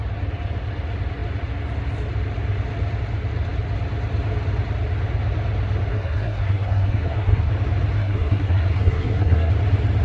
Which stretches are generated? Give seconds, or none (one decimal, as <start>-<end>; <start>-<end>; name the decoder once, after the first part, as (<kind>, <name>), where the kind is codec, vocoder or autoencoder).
5.9-7.5 (codec, SNAC); 8.0-9.5